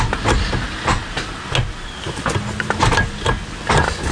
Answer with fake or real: real